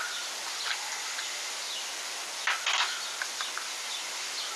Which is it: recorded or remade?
recorded